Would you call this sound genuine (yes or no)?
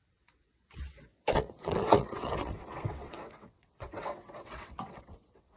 no